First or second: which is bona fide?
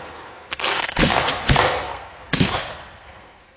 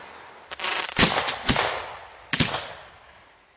second